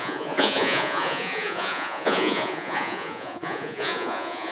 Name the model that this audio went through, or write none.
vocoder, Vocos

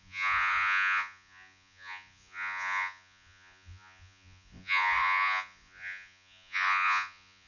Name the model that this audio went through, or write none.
vocoder, Vocos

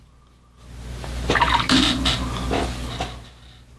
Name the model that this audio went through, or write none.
none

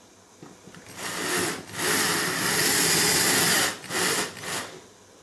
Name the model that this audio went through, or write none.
none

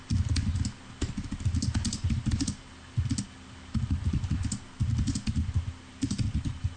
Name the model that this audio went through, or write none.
none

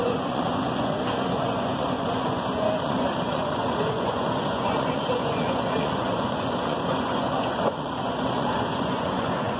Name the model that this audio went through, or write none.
vocoder, Vocos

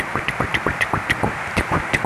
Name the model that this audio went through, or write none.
none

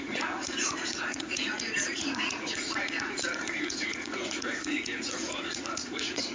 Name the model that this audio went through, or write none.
vocoder, Vocos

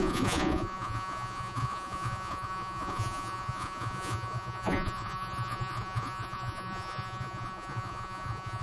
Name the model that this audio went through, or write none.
vocoder, Vocos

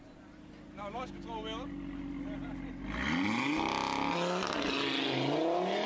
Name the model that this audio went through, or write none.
none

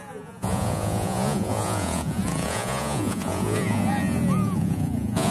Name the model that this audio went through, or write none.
vocoder, Vocos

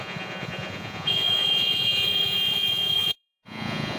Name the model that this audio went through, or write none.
vocoder, Vocos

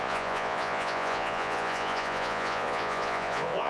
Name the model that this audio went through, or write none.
vocoder, Vocos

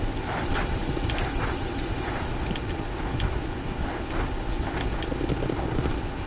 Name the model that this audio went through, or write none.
none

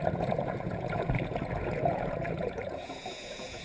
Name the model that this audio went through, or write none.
vocoder, Vocos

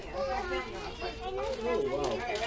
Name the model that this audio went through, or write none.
none